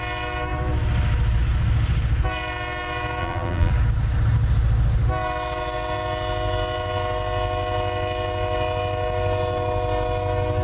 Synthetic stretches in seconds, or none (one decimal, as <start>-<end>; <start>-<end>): 3.2-3.7